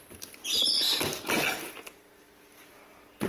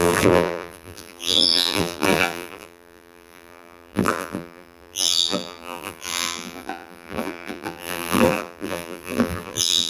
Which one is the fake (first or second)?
second